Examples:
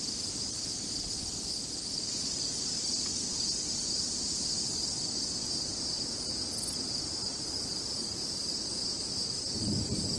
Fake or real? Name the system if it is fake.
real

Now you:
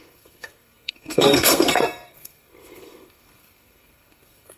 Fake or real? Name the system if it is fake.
fake, codec, SNAC